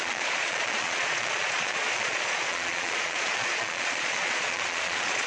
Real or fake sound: fake